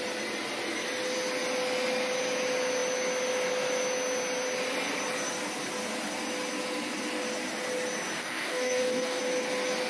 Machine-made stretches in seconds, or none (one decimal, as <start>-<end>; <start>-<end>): 8.2-9.2